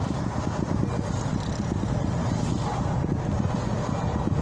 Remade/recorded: recorded